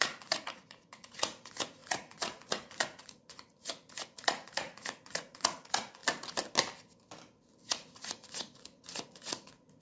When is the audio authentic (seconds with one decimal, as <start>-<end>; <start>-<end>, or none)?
6.0-7.7